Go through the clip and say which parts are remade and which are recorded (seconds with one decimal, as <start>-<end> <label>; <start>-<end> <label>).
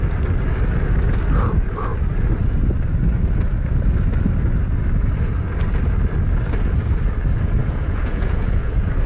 0.0-7.6 recorded; 7.6-8.7 remade; 8.7-9.1 recorded